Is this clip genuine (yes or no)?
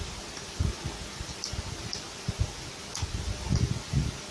yes